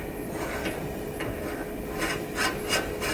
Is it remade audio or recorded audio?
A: recorded